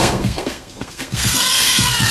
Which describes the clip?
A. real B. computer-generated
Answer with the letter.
B